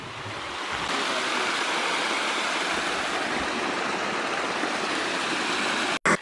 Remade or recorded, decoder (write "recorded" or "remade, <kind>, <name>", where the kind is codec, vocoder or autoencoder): recorded